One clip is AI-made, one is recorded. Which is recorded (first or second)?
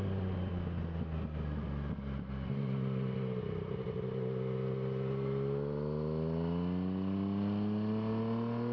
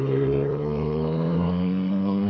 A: first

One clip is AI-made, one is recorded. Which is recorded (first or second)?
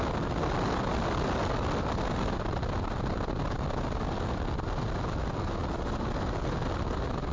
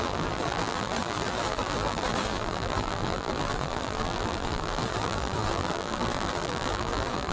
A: first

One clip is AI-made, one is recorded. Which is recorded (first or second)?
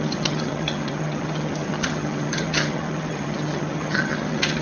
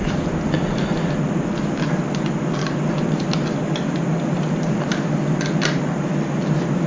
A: second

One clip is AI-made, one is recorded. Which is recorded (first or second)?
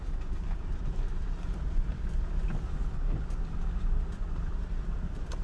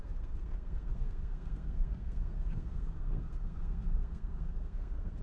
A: first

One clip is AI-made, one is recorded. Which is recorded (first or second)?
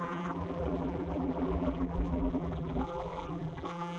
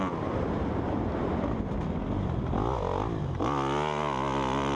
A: second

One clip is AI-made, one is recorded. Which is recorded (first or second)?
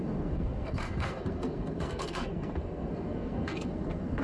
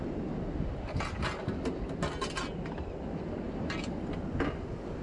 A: second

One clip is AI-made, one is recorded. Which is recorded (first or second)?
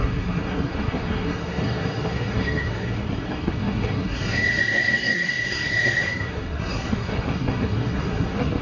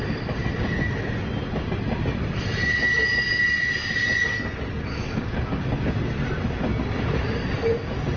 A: second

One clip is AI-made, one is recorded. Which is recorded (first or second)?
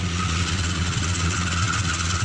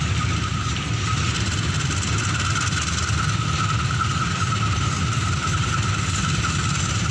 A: second